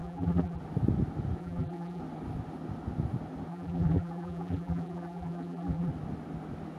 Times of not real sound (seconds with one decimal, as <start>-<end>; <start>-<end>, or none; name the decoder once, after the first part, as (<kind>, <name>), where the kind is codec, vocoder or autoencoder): 0.0-0.6 (vocoder, BigVGAN v2); 1.4-2.0; 3.5-5.9